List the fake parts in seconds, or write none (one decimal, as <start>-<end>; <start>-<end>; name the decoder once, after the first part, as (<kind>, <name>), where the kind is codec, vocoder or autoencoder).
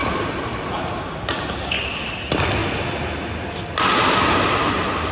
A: none